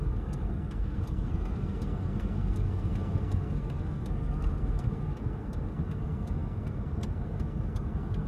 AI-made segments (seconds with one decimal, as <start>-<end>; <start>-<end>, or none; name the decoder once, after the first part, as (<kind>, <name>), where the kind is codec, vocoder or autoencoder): 0.0-8.3 (codec, SNAC)